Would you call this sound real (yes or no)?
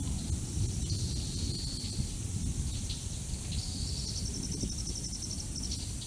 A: yes